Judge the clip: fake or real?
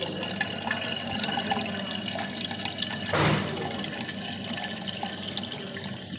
real